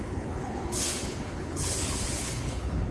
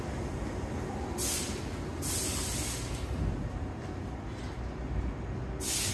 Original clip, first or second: second